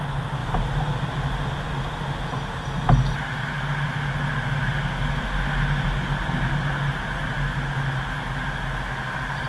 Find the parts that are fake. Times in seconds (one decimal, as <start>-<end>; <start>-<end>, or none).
none